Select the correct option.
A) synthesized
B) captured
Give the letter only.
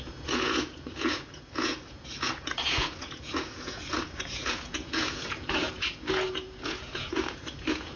A